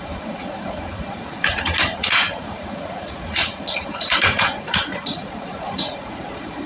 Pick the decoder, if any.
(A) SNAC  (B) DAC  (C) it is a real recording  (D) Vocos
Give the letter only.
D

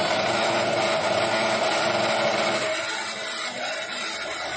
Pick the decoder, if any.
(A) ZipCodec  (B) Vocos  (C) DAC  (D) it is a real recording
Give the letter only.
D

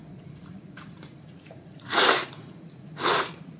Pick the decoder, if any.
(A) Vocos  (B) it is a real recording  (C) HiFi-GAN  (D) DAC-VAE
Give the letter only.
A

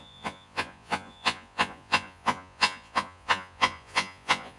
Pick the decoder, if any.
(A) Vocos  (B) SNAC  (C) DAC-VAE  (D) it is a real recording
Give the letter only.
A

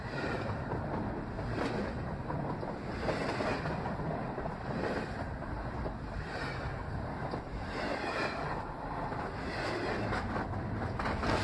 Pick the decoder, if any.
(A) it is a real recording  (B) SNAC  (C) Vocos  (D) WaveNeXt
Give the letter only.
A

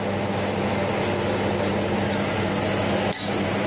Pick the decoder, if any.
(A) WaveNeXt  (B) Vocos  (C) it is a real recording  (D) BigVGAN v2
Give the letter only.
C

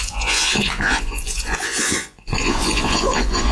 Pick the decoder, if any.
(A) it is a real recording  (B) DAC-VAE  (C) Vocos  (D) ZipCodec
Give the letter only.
C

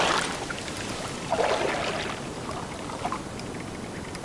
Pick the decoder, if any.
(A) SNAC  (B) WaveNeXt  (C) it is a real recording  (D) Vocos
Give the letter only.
C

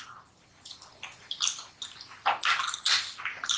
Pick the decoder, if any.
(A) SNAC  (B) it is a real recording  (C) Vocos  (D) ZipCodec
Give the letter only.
B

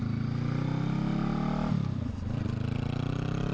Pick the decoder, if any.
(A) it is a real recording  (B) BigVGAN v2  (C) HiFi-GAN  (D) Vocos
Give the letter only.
A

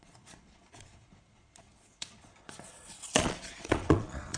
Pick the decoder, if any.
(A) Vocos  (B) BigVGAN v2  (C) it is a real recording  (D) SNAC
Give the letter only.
A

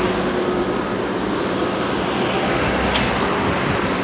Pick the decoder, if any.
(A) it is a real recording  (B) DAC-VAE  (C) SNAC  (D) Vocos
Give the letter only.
A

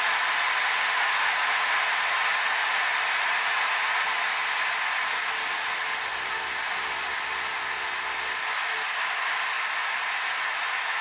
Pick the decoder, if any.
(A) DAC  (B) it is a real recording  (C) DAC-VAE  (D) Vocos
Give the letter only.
B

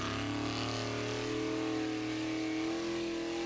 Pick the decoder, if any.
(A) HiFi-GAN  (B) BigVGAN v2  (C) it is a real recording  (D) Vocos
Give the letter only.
C